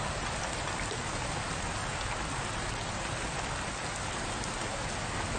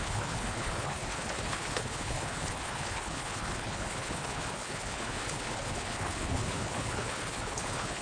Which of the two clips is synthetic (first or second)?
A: second